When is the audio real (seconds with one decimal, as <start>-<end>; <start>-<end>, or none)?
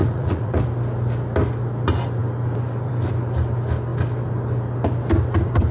0.6-5.7